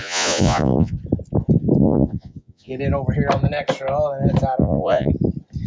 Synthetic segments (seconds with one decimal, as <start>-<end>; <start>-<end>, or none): 0.0-1.0; 1.8-2.7; 4.6-5.1